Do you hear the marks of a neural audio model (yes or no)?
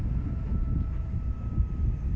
no